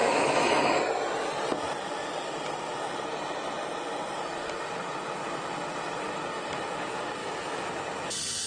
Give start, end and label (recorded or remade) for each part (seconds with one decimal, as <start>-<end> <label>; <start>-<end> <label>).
0.0-0.8 remade; 0.8-7.2 recorded; 7.2-7.7 remade; 7.7-8.5 recorded

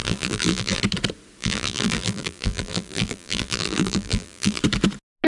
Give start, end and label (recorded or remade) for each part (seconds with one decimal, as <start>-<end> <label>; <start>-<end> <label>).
0.0-0.8 remade; 0.8-1.4 recorded; 1.4-4.6 remade; 4.6-5.3 recorded

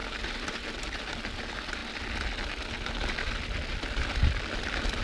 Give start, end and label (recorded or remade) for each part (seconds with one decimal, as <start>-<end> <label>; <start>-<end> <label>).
0.0-5.0 recorded

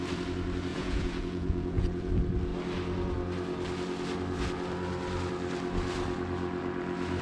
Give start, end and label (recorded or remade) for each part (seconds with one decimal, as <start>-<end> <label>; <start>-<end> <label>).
0.0-0.7 recorded; 0.7-2.1 remade; 2.1-7.2 recorded

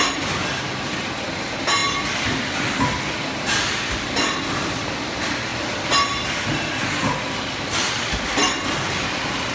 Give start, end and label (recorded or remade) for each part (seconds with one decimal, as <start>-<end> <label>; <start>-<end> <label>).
0.0-9.5 recorded

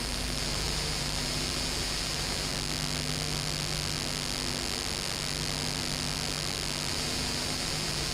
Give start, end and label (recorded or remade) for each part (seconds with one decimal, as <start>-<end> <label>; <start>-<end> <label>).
0.0-2.5 remade; 2.5-6.9 recorded; 6.9-8.1 remade

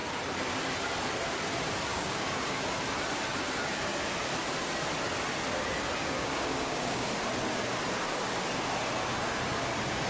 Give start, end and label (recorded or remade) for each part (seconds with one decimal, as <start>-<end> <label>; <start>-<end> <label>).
0.0-1.9 recorded; 1.9-2.6 remade; 2.6-6.0 recorded; 6.0-7.1 remade; 7.1-10.1 recorded